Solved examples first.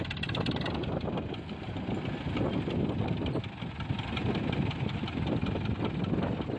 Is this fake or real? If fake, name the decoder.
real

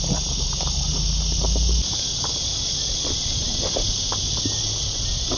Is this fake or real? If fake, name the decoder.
real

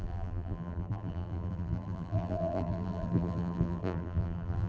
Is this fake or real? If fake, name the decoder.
fake, vocoder, BigVGAN v2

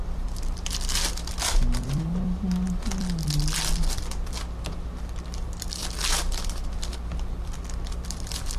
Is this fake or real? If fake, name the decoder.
fake, vocoder, BigVGAN v2